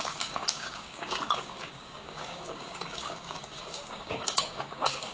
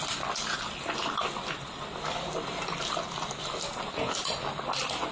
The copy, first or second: first